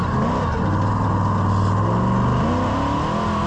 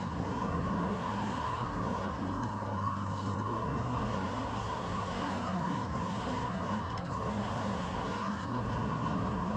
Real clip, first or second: first